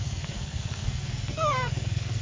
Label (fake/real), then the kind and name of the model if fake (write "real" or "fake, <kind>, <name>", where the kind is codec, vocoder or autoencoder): fake, codec, SNAC